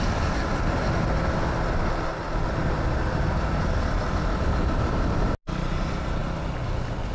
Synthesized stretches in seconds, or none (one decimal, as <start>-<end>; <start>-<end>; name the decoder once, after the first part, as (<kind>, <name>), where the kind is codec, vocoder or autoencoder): none